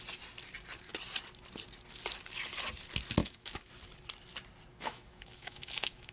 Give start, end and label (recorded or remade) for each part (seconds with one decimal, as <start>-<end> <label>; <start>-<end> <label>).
0.0-3.2 recorded; 3.2-3.7 remade; 3.7-4.7 recorded; 4.7-6.1 remade